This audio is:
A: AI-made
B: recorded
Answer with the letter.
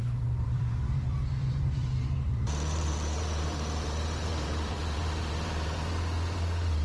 A